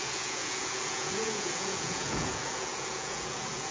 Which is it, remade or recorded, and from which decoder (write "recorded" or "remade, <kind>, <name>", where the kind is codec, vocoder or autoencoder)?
remade, vocoder, Vocos